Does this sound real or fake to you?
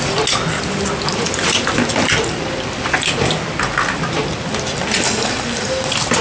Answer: real